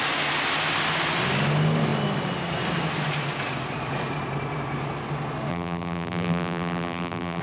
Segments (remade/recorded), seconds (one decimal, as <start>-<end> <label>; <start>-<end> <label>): 0.0-5.5 recorded; 5.5-7.4 remade